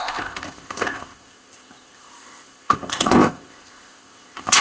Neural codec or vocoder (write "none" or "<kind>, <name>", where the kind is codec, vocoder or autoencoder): codec, ZipCodec